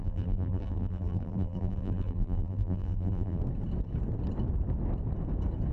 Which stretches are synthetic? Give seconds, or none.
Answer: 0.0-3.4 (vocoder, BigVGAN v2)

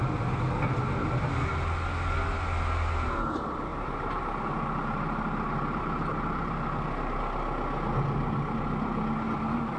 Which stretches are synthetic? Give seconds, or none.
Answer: 3.7-7.2 (vocoder, BigVGAN v2)